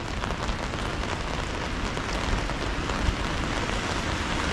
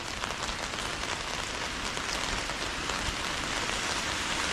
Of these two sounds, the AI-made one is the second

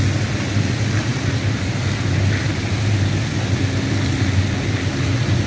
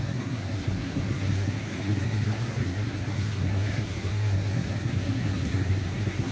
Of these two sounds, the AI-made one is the second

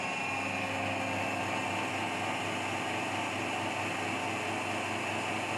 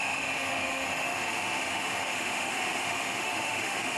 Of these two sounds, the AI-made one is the second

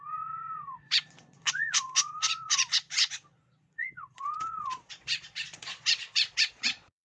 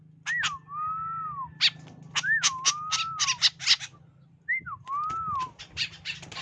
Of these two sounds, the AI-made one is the first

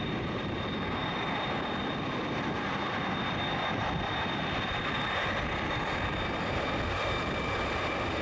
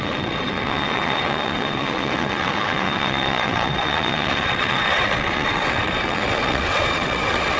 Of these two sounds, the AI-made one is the second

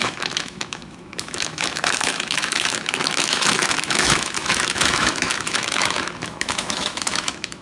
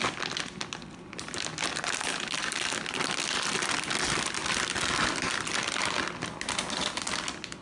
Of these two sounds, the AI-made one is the first